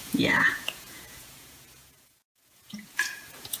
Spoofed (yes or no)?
yes